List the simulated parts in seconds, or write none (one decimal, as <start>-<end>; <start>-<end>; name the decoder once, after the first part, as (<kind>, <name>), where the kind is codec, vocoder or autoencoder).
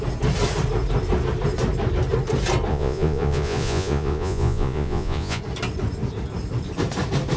2.7-5.4 (vocoder, Vocos)